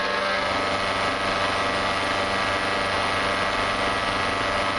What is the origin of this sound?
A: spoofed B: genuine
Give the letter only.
B